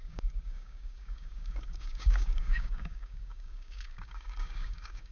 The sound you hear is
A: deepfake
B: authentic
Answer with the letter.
A